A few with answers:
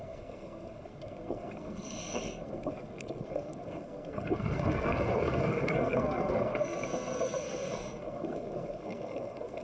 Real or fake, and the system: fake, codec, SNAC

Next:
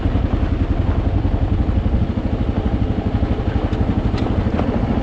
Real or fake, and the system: real